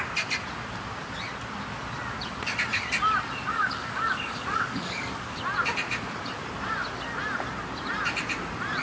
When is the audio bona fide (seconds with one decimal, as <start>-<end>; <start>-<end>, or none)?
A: 0.0-3.5; 5.4-8.8

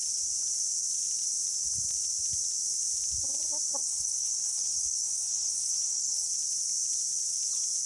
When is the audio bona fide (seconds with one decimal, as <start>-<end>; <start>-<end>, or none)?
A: 0.0-3.8; 6.3-7.9

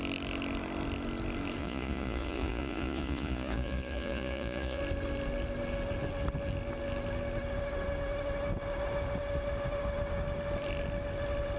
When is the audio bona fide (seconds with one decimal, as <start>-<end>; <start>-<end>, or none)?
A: 0.0-1.6; 4.8-11.6

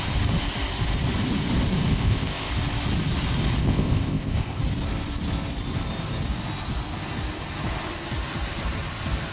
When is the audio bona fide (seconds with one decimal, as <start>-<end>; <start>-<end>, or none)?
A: 0.0-1.9; 2.5-3.6; 4.6-9.3